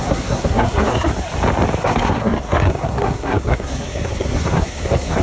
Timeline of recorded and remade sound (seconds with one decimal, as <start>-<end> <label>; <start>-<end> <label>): 0.0-1.1 remade; 1.1-1.8 recorded; 1.8-5.2 remade